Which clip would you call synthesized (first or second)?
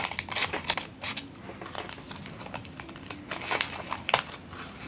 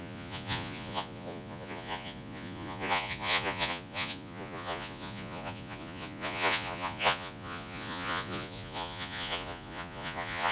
second